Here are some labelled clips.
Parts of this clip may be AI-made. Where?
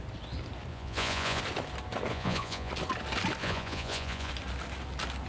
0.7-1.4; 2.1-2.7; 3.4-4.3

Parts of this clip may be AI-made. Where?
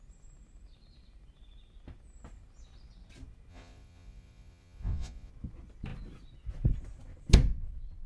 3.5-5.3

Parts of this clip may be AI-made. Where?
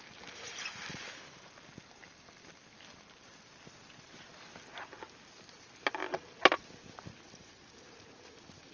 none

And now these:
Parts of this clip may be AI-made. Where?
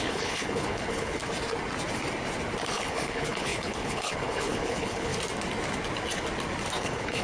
0.0-1.2; 2.7-5.1; 6.8-7.2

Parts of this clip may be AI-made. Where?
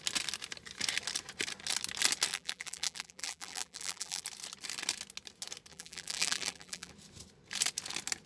2.3-4.2; 5.7-6.9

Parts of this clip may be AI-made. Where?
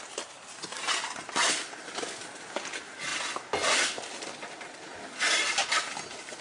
none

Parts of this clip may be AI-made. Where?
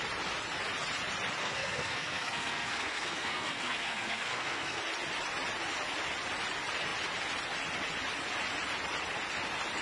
1.4-4.8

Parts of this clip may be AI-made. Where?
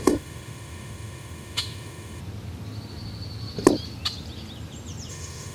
0.0-2.2; 5.1-5.5